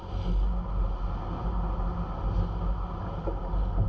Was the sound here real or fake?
real